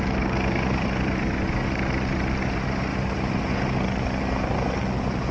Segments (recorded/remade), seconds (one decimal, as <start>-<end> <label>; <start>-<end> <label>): 0.0-2.9 recorded; 2.9-3.4 remade; 3.4-5.3 recorded